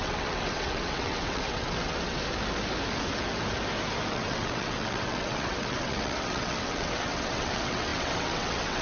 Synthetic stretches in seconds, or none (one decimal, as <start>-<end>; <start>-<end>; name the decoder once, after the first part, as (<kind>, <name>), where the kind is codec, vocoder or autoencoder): 0.0-2.2 (vocoder, WaveNeXt); 4.1-8.8